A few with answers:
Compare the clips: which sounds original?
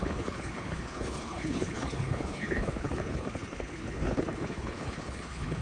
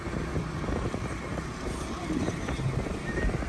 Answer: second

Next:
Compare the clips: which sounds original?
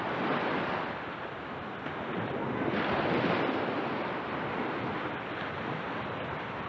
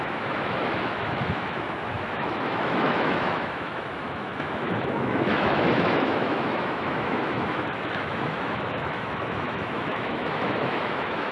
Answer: first